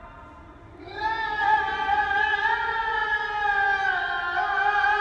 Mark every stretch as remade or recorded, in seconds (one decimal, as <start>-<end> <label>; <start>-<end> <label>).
0.0-5.0 recorded

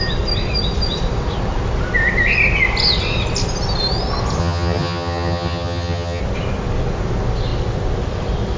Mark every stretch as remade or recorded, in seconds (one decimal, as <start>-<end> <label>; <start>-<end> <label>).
0.0-4.4 recorded; 4.4-6.2 remade; 6.2-8.6 recorded